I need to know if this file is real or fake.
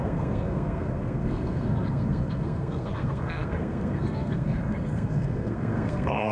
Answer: fake